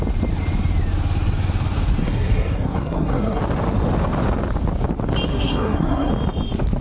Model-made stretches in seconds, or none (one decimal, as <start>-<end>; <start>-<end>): 2.0-3.4; 5.3-6.1